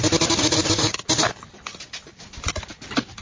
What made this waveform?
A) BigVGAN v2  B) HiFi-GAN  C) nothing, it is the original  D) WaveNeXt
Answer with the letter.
C